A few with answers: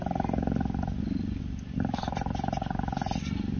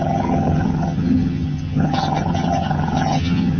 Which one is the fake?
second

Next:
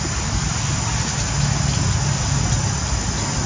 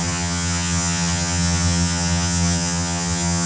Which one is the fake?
second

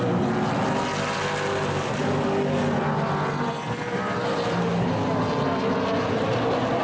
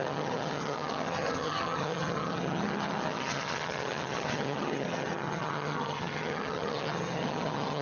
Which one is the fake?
second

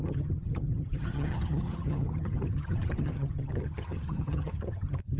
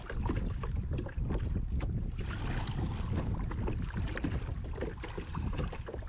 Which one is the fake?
first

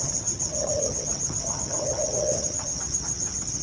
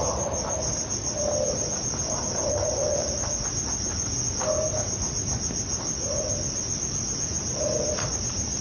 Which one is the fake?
first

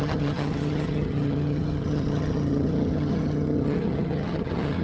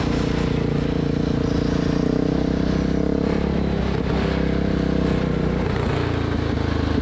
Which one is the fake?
first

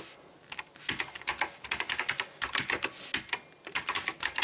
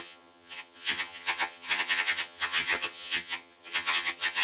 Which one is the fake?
second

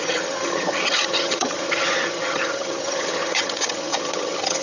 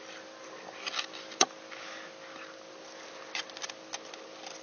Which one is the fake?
first